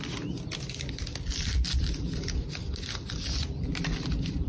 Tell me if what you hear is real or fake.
real